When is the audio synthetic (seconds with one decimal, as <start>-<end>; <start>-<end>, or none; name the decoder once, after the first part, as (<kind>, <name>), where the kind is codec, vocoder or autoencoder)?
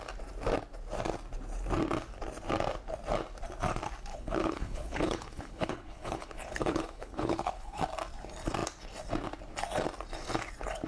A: 4.1-7.8 (codec, HILCodec)